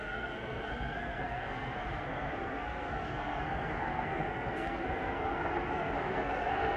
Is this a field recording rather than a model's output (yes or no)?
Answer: no